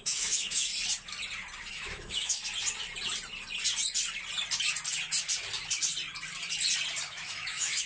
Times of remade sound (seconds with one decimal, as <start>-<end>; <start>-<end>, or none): 0.0-0.7; 1.7-2.4; 7.1-7.9